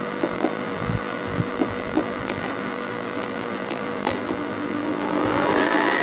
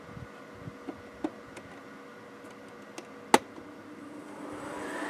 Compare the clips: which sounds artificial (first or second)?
first